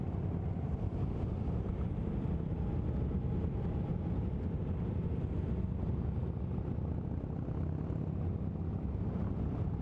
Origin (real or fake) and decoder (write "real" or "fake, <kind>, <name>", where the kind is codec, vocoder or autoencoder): real